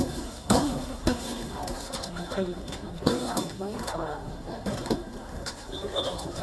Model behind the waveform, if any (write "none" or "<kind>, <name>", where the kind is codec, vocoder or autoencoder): codec, SNAC